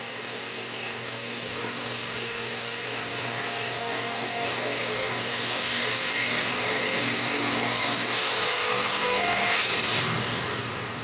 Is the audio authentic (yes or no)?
no